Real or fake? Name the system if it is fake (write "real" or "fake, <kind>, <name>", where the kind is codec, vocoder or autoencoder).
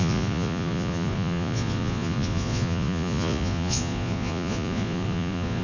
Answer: fake, vocoder, Vocos